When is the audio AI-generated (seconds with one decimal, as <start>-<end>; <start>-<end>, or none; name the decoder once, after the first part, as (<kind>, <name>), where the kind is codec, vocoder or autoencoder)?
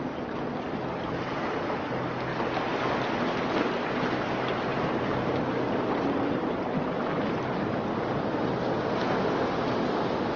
none